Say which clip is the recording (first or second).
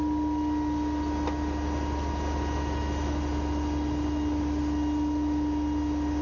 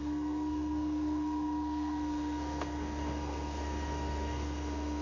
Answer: first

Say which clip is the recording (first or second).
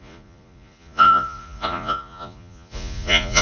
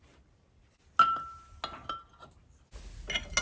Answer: second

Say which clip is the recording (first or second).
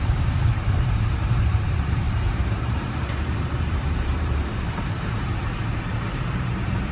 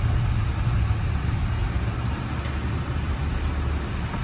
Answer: second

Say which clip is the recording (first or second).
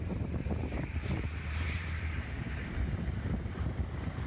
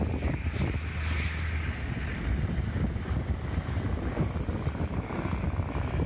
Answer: second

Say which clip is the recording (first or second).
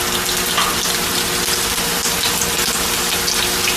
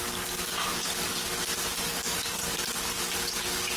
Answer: first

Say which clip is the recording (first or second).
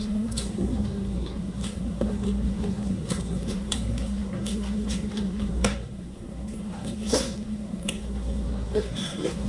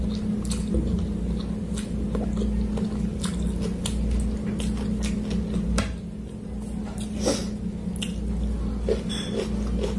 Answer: second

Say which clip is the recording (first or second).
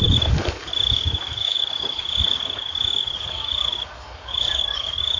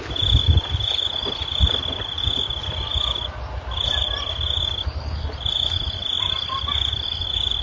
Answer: second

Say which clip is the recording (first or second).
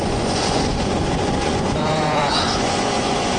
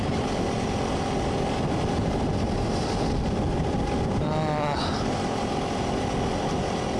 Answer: second